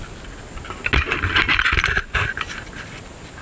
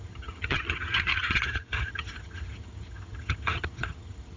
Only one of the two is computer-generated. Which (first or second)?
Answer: second